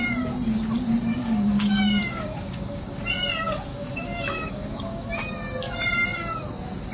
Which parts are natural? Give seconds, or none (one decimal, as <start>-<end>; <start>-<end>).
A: 0.0-1.1; 3.0-3.7; 5.1-6.9